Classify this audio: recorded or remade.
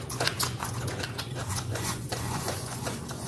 remade